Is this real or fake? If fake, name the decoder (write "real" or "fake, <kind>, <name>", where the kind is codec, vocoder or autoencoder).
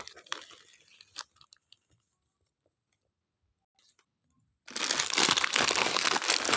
real